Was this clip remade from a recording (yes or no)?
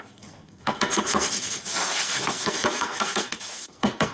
yes